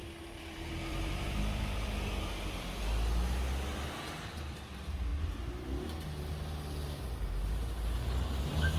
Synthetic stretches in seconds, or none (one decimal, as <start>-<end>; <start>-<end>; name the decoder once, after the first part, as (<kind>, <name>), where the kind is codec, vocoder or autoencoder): 0.0-2.8 (vocoder, BigVGAN v2)

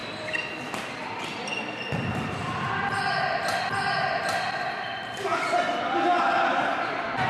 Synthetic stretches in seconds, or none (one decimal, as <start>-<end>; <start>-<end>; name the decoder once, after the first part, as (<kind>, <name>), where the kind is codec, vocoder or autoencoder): 0.0-3.6 (vocoder, BigVGAN v2)

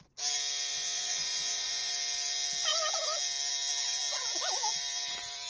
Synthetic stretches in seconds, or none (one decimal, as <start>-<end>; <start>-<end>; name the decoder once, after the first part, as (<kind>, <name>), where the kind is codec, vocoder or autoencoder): 0.7-1.9 (vocoder, Vocos)

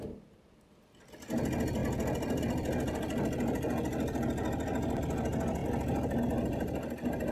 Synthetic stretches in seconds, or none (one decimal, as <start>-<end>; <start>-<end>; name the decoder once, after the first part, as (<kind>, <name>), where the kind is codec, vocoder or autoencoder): none

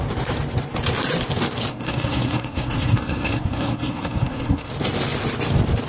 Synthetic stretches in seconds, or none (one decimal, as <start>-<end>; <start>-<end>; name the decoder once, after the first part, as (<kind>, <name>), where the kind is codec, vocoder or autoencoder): 1.7-4.7 (codec, SNAC)

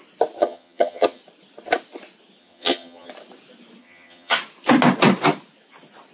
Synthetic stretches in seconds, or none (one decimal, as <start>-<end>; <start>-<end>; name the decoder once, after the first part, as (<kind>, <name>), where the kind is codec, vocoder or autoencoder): 0.4-1.2 (vocoder, HiFi-GAN); 2.4-3.1; 3.8-4.4

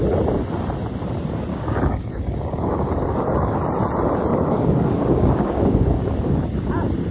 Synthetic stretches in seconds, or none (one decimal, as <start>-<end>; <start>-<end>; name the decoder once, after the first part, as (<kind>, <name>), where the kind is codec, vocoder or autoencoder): 1.5-3.6 (codec, DAC); 4.3-6.0